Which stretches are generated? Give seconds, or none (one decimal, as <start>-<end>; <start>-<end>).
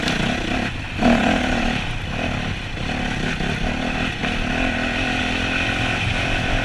none